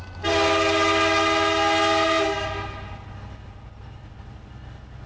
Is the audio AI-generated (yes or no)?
no